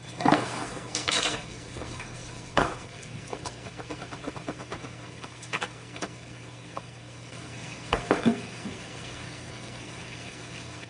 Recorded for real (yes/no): no